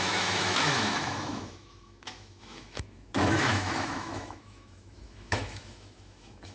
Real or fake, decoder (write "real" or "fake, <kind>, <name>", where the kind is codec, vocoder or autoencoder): fake, autoencoder, DAC-VAE